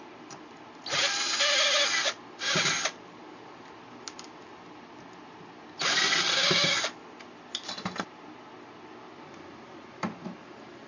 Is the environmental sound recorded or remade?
recorded